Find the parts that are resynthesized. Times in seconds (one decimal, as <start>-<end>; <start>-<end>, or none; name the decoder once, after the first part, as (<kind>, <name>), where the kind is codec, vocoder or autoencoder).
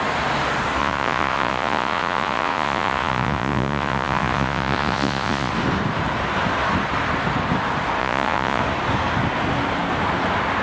0.8-5.5 (vocoder, Vocos); 8.0-8.6